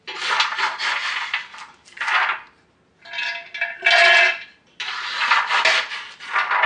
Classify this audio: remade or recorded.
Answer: recorded